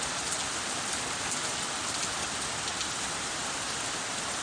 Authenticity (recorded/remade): recorded